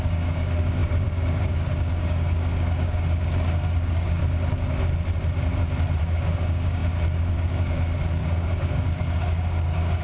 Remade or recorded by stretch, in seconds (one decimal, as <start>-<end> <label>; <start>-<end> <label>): 0.0-4.2 remade; 4.2-6.0 recorded; 6.0-10.0 remade